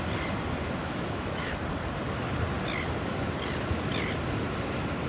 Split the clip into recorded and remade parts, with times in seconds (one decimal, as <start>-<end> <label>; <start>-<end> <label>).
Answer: 0.0-0.8 recorded; 0.8-1.5 remade; 1.5-5.1 recorded